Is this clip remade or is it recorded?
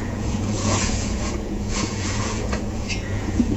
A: remade